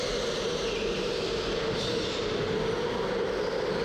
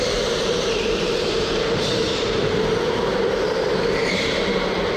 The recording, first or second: first